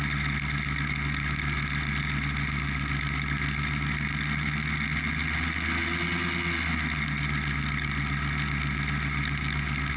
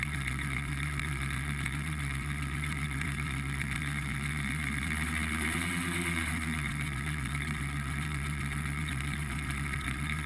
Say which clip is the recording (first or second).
first